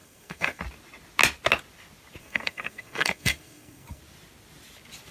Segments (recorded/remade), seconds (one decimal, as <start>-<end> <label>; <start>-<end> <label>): 0.0-0.6 remade; 0.6-2.2 recorded; 2.2-4.0 remade; 4.0-5.1 recorded